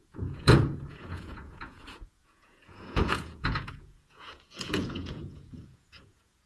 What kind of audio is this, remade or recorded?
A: remade